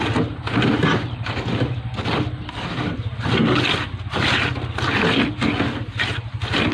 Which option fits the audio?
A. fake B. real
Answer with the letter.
B